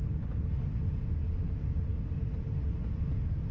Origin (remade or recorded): recorded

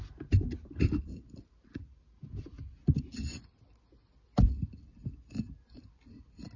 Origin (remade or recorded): recorded